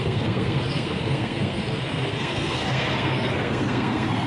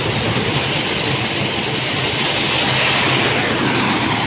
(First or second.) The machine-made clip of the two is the first